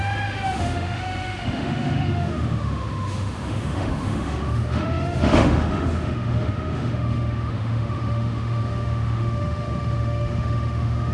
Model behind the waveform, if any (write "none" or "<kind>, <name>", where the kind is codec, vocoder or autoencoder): autoencoder, DAC-VAE